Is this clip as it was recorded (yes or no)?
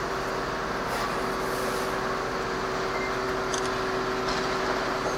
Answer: yes